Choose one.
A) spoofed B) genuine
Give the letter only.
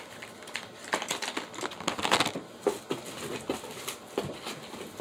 B